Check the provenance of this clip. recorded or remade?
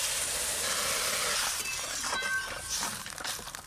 remade